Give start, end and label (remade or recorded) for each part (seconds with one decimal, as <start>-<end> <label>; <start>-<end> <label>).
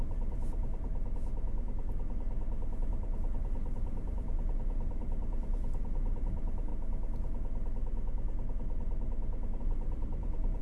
0.0-0.9 remade; 0.9-2.8 recorded; 2.8-6.7 remade; 6.7-9.6 recorded; 9.6-10.6 remade